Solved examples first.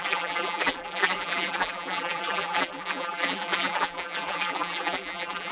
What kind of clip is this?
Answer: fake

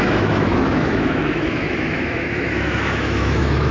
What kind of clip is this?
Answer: fake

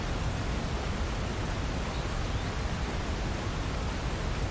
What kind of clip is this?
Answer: real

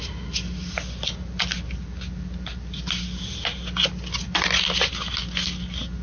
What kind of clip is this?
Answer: real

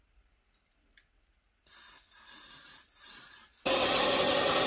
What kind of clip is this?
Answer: real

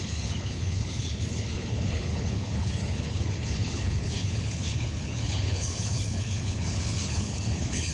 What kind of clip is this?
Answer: fake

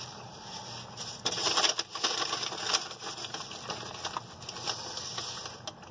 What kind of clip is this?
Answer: real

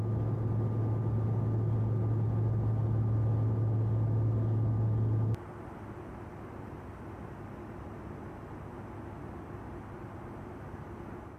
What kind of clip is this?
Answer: real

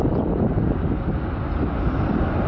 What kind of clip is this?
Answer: real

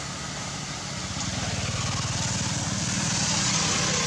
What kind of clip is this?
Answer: real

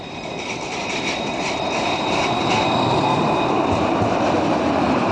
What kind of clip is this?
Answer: fake